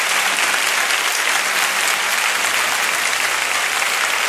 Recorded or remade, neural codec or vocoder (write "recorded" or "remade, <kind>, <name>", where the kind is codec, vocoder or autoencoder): recorded